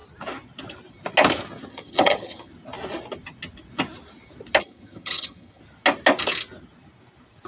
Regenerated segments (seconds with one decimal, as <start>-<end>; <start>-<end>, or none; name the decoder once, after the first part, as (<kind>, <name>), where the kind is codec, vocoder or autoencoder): 1.7-2.5 (vocoder, HiFi-GAN); 4.6-5.6